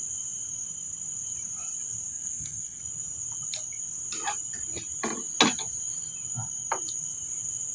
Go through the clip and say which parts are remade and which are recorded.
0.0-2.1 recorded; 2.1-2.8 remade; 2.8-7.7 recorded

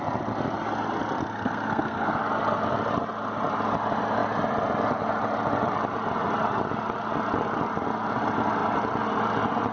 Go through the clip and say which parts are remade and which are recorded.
0.0-1.2 recorded; 1.2-2.2 remade; 2.2-9.7 recorded

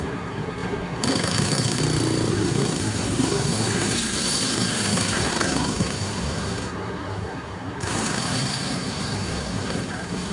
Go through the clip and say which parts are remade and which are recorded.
0.0-1.8 remade; 1.8-2.3 recorded; 2.3-10.3 remade

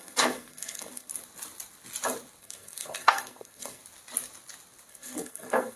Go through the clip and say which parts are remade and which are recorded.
0.0-1.1 remade; 1.1-2.4 recorded; 2.4-3.8 remade; 3.8-4.9 recorded; 4.9-5.8 remade

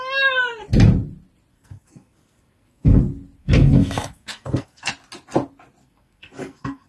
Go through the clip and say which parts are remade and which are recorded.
0.0-1.5 recorded; 1.5-3.0 remade; 3.0-3.4 recorded; 3.4-4.9 remade; 4.9-5.8 recorded; 5.8-6.9 remade

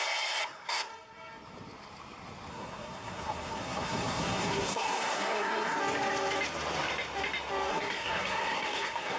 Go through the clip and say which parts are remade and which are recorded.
0.0-0.9 remade; 0.9-2.5 recorded; 2.5-5.8 remade; 5.8-7.7 recorded; 7.7-9.2 remade